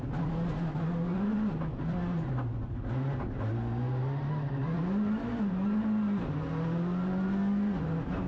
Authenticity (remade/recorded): recorded